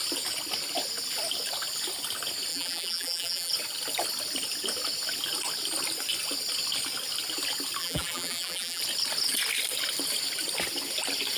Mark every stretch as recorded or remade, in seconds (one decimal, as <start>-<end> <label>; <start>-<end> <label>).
0.0-2.5 recorded; 2.5-3.5 remade; 3.5-7.8 recorded; 7.8-8.8 remade; 8.8-11.4 recorded